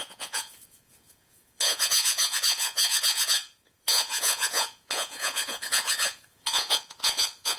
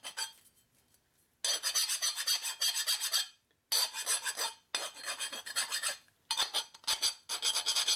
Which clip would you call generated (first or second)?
first